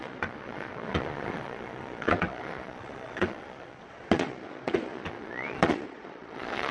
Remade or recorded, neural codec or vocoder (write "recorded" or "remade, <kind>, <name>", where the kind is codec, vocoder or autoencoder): remade, vocoder, Vocos